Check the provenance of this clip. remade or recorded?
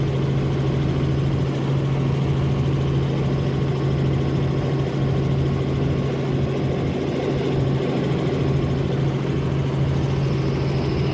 recorded